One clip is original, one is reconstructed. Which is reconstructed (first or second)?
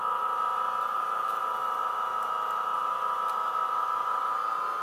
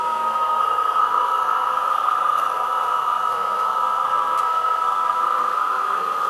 second